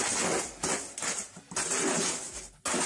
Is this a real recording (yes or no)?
yes